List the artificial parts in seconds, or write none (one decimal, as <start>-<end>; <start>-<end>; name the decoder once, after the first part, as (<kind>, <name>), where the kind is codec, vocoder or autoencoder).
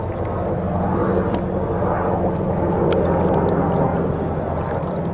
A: none